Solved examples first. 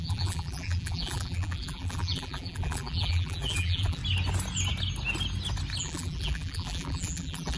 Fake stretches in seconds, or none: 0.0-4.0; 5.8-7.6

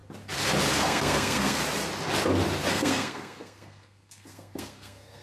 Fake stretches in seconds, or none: 0.7-1.6; 2.7-5.2

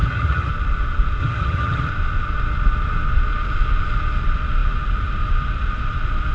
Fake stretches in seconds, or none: 0.0-0.5; 1.2-1.9

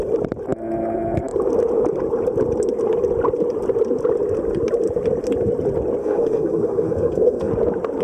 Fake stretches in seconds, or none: 6.0-7.5

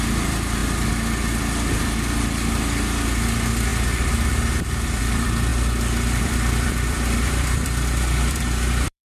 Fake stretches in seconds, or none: 0.0-0.6; 1.8-3.7; 5.0-5.5; 6.2-9.0